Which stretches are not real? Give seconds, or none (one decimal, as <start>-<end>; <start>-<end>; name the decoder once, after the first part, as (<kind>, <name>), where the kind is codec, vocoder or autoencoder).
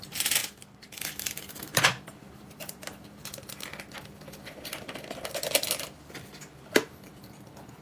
0.0-3.2 (vocoder, BigVGAN v2); 6.6-7.8